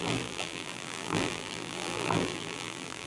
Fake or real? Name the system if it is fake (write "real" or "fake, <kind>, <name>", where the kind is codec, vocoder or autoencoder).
fake, vocoder, BigVGAN v2